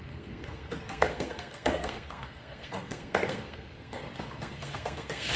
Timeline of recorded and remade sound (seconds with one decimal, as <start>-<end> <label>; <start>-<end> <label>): 0.0-5.4 remade